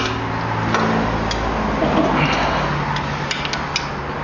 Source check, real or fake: real